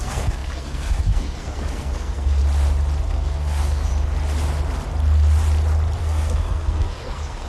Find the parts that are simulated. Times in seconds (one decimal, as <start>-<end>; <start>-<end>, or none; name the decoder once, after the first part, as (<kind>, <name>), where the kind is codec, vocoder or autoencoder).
0.0-2.4 (codec, SNAC); 3.1-3.9; 6.0-7.5